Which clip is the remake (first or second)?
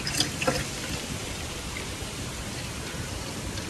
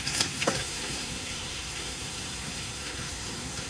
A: second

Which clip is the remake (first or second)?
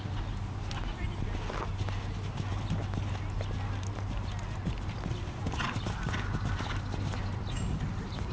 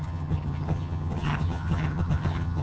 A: second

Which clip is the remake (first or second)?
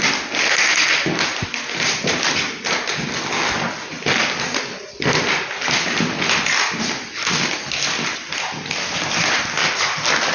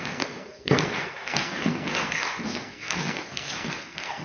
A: second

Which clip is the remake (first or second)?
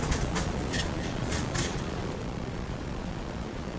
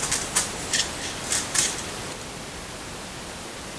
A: first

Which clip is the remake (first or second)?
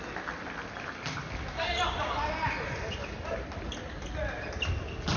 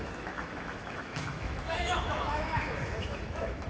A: second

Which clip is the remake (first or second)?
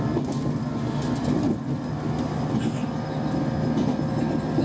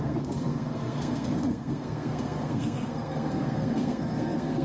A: second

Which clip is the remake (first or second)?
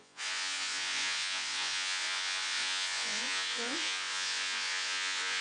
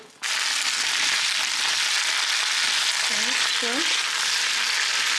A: first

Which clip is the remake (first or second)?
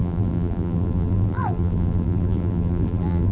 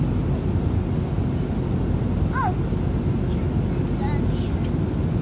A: first